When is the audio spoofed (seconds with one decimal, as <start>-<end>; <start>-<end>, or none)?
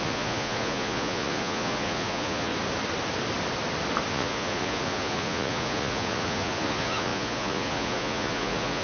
0.0-2.5; 4.1-8.8